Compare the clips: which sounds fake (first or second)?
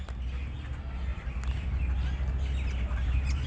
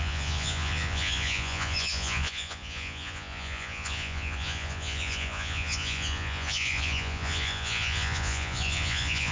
second